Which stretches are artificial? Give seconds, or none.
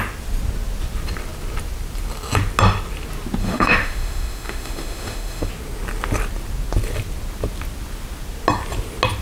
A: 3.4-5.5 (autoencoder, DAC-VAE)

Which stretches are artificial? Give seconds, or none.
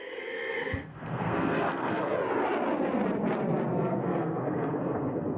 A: 0.0-2.1 (codec, SNAC); 3.7-5.4